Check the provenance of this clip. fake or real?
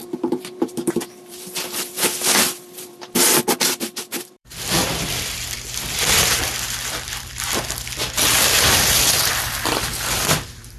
fake